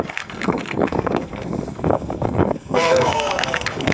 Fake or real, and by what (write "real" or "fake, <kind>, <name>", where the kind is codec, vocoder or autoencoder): fake, codec, SNAC